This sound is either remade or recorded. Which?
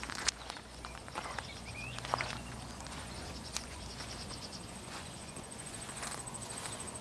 remade